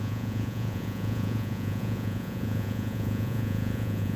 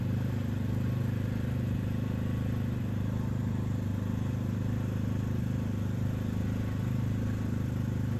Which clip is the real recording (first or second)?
second